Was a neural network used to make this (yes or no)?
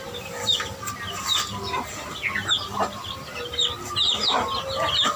no